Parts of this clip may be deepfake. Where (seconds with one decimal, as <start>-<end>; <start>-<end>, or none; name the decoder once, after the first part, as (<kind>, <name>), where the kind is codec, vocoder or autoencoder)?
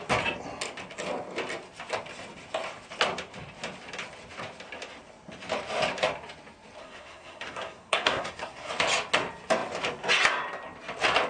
6.8-8.7 (codec, SNAC)